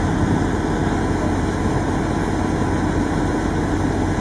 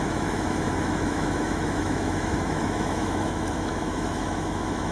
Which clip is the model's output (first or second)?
second